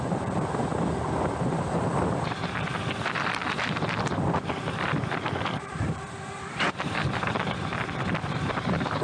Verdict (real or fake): fake